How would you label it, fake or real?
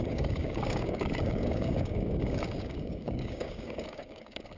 fake